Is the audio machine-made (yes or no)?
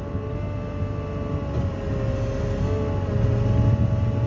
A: no